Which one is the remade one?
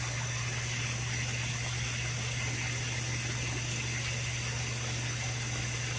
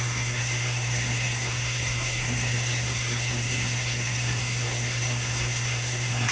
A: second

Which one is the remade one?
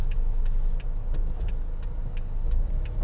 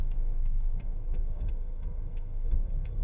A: second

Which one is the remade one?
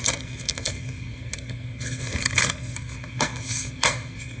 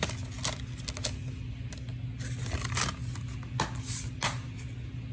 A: first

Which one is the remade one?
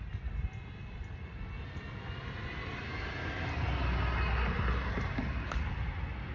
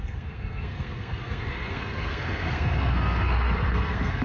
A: second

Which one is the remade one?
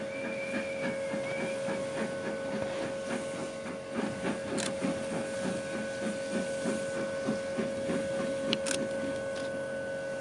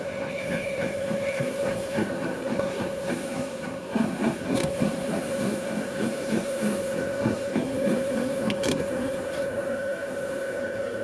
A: second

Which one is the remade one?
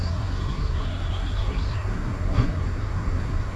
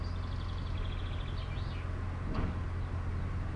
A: first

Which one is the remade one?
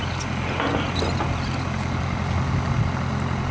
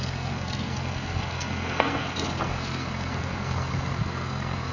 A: second